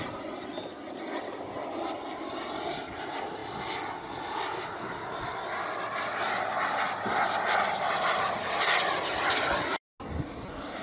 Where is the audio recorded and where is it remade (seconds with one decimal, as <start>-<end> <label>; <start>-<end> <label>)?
0.0-10.8 recorded